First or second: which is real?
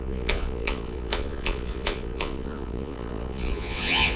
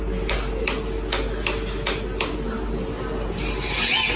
second